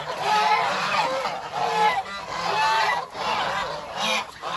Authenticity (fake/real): real